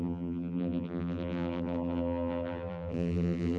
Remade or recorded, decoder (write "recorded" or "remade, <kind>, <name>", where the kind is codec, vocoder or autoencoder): remade, vocoder, BigVGAN v2